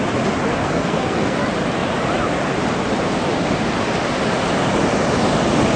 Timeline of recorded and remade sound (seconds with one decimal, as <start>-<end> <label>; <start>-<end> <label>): 0.0-0.5 recorded; 0.5-1.4 remade; 1.4-5.8 recorded